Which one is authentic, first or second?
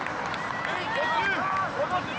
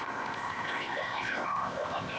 first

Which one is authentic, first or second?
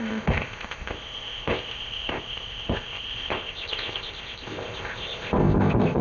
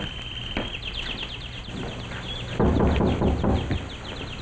second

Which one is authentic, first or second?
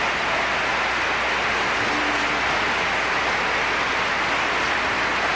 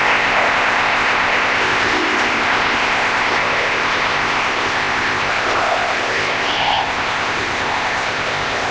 first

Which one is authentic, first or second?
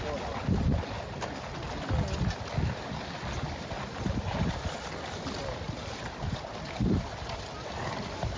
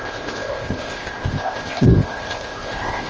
first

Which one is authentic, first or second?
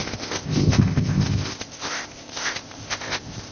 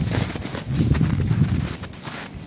second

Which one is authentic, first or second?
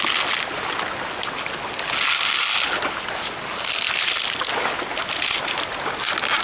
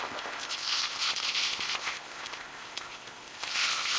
first